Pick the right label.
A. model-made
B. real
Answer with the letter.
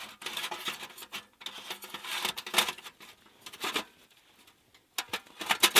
B